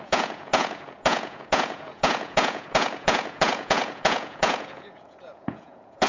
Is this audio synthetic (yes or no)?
yes